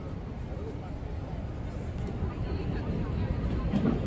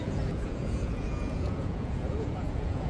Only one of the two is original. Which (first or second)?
first